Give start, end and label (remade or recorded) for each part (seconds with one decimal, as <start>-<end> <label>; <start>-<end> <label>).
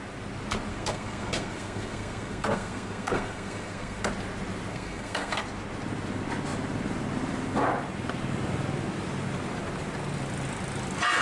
0.0-0.7 recorded; 0.7-4.0 remade; 4.0-4.7 recorded; 4.7-5.4 remade; 5.4-11.2 recorded